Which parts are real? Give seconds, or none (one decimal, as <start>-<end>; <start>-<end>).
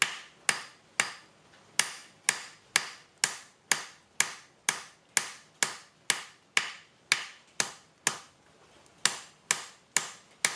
0.0-10.6